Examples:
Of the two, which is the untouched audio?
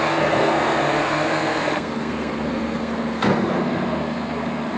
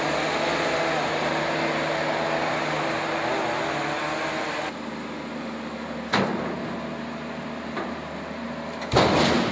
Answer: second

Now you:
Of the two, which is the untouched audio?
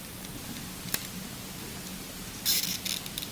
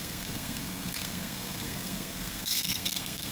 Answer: first